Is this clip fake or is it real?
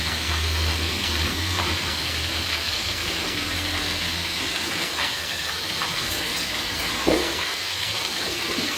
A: fake